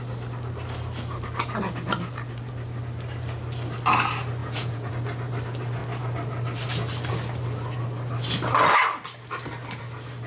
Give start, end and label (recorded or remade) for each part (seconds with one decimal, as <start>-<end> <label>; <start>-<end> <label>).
0.0-4.4 recorded; 4.4-4.9 remade; 4.9-10.3 recorded